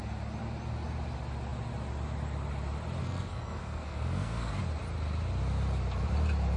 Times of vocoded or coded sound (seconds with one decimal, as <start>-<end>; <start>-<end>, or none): 3.0-4.6